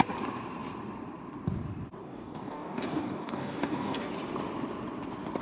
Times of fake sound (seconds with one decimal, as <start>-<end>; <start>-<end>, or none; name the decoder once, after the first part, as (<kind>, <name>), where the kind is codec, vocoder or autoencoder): 2.0-4.1 (codec, DAC)